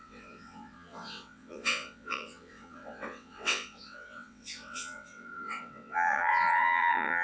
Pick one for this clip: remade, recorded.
remade